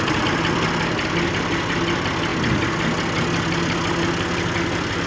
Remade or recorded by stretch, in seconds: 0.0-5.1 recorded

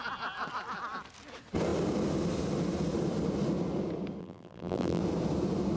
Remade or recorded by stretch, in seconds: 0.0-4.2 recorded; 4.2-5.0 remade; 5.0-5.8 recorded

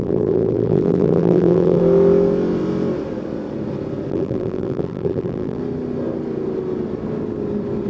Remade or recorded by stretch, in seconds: 0.0-1.8 remade; 1.8-4.1 recorded; 4.1-5.6 remade; 5.6-7.9 recorded

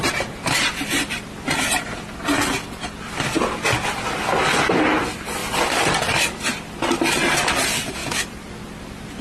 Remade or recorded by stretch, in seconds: 0.0-9.2 recorded

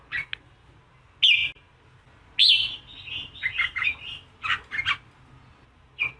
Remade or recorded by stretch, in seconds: 0.0-6.2 recorded

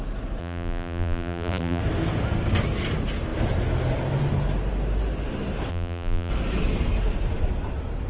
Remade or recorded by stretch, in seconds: 0.0-0.4 recorded; 0.4-1.8 remade; 1.8-5.7 recorded; 5.7-6.3 remade; 6.3-8.1 recorded

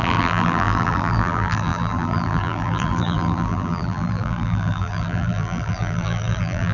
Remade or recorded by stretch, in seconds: 0.0-6.7 remade